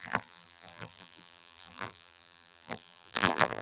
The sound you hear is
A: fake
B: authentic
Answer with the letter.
A